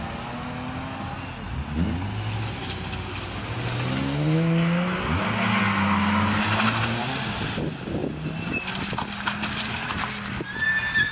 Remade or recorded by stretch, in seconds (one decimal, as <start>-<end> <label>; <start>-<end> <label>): 0.0-11.1 recorded